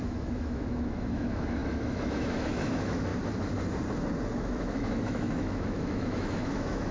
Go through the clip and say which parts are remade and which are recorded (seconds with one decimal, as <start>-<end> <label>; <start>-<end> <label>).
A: 0.0-3.1 remade; 3.1-4.3 recorded; 4.3-6.9 remade